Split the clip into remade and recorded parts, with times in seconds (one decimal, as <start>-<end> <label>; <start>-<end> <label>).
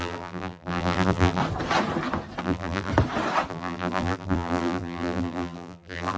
0.0-1.4 remade; 1.4-2.4 recorded; 2.4-2.9 remade; 2.9-3.5 recorded; 3.5-6.2 remade